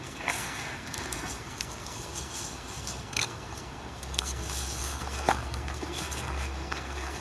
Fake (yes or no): yes